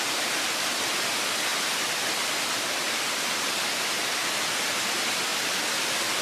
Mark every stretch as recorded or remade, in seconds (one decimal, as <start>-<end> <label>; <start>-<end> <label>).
0.0-6.2 recorded